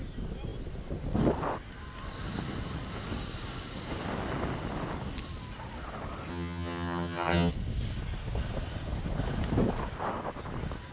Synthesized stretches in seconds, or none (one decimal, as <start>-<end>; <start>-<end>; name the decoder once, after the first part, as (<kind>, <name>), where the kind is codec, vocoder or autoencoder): 6.3-7.5 (vocoder, HiFi-GAN)